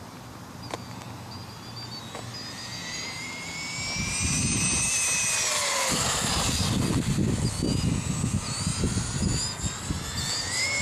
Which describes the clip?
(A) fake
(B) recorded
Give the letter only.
B